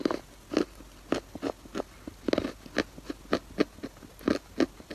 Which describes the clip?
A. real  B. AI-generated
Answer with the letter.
A